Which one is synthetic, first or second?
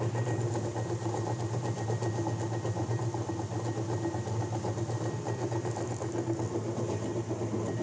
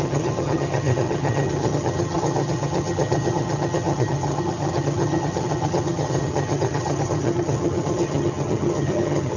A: second